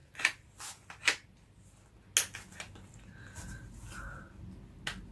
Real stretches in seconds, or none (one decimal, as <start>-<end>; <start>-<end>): 0.0-5.1